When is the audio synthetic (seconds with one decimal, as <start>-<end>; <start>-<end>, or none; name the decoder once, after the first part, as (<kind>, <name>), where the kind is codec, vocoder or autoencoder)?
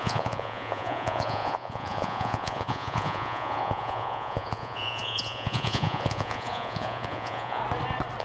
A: 0.0-7.6 (vocoder, Vocos)